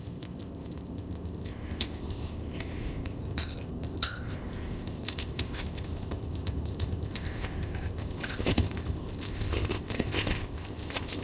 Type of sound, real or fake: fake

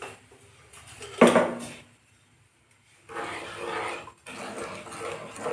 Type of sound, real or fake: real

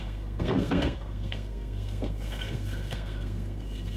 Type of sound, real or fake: fake